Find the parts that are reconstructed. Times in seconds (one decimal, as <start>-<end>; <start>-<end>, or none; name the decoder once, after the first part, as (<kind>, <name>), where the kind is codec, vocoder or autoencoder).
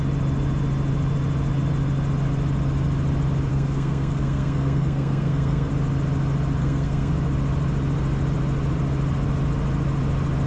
3.5-5.7 (codec, SNAC); 6.6-7.1